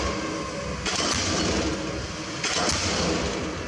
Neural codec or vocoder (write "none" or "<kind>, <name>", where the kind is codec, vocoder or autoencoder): none